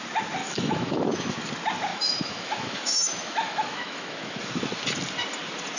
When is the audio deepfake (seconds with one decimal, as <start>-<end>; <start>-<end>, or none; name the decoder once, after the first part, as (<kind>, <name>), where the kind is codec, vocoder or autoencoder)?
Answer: 0.4-1.3 (autoencoder, DAC-VAE); 1.9-4.4